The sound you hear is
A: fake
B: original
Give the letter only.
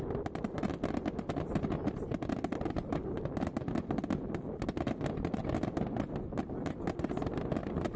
B